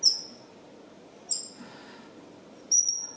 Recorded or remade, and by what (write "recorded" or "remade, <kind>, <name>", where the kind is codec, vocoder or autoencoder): recorded